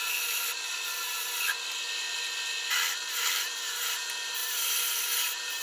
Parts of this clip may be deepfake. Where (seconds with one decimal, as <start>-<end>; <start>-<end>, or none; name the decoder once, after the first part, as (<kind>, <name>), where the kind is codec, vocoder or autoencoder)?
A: 3.4-5.6 (vocoder, BigVGAN v2)

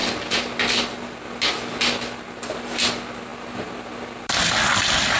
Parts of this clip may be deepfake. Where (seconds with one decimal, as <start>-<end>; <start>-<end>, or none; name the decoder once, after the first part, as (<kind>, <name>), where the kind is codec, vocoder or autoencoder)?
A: none

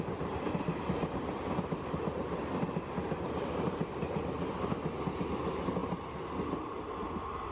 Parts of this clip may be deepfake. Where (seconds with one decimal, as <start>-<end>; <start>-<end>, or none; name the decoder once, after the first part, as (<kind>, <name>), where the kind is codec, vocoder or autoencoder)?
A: none

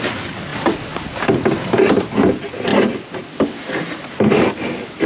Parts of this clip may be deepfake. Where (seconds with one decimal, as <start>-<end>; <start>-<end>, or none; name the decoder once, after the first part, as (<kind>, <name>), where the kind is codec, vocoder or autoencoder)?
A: none

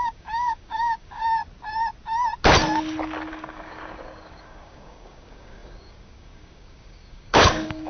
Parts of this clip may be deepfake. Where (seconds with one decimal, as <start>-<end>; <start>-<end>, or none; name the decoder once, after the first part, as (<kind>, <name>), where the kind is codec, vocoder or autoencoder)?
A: 0.0-1.4 (codec, DAC); 3.3-7.9

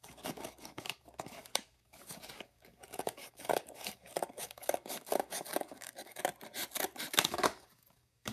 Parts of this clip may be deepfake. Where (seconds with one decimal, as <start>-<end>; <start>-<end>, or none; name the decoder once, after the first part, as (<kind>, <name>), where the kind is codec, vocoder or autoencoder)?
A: 0.0-6.2 (codec, DAC); 7.1-8.3